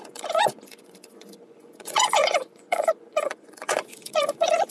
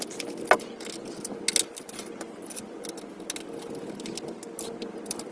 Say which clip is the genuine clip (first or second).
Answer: second